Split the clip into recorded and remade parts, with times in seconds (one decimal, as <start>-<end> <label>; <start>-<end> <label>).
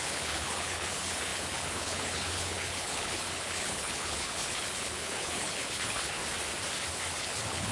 0.0-6.2 remade; 6.2-7.2 recorded; 7.2-7.7 remade